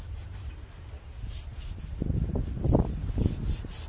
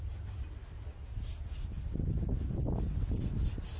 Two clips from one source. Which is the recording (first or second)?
second